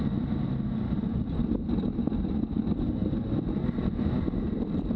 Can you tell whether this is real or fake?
real